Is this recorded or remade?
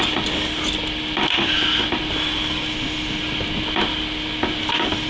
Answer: recorded